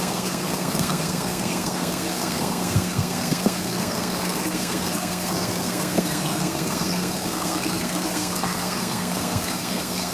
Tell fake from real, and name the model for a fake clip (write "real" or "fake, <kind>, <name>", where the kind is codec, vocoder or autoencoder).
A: fake, codec, SNAC